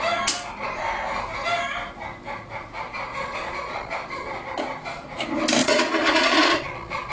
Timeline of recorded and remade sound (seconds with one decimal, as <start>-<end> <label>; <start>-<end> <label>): 0.0-3.1 recorded; 3.1-3.9 remade; 3.9-5.6 recorded; 5.6-7.1 remade